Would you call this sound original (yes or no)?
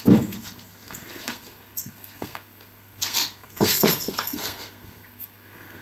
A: no